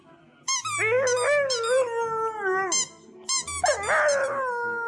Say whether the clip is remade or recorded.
recorded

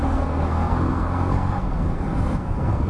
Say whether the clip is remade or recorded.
remade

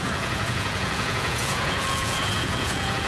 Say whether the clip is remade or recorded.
remade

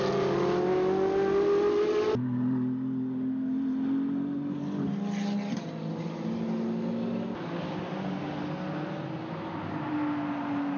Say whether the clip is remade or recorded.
recorded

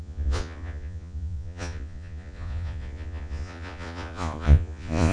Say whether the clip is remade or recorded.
remade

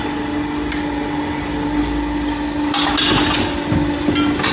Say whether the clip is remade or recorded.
recorded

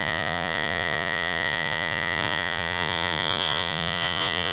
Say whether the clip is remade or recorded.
remade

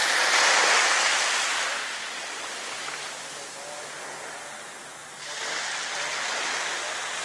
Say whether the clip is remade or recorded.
recorded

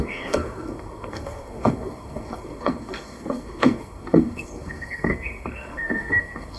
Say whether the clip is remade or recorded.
remade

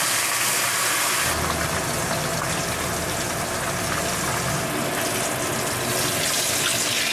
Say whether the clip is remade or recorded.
recorded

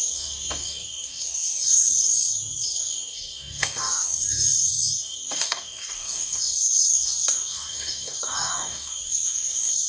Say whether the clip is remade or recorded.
remade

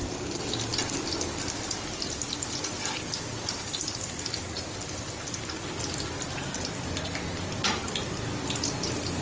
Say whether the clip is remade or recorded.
recorded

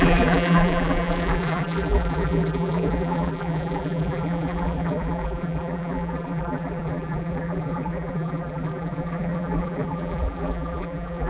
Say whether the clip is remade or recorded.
remade